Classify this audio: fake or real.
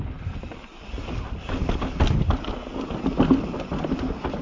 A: real